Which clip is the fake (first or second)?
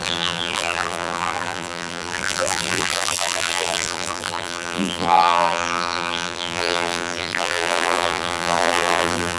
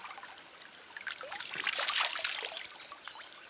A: first